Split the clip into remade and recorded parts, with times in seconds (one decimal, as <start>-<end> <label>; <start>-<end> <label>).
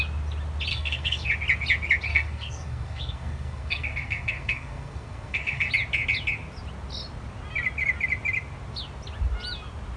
0.0-0.7 recorded; 0.7-1.3 remade; 1.3-2.1 recorded; 2.1-5.7 remade; 5.7-10.0 recorded